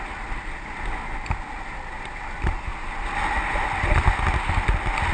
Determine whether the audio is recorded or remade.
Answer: recorded